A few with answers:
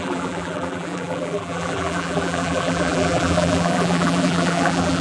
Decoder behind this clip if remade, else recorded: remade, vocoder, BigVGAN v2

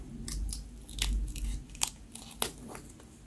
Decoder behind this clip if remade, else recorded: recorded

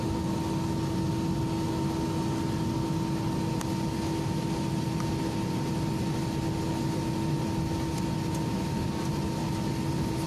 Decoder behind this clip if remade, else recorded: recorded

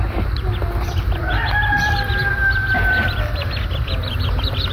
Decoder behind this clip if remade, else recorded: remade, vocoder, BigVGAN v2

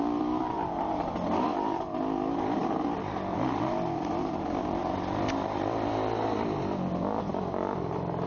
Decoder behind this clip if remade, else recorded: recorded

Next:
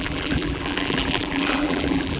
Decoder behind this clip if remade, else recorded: remade, vocoder, BigVGAN v2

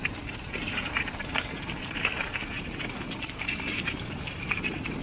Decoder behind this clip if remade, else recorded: remade, vocoder, BigVGAN v2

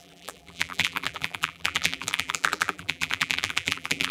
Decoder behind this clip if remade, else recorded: remade, vocoder, BigVGAN v2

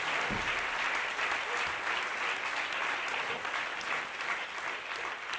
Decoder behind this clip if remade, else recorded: recorded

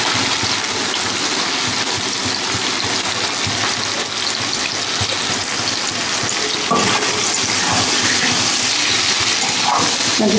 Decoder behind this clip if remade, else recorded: recorded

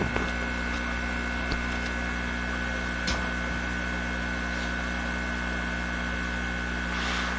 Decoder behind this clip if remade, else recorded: remade, vocoder, BigVGAN v2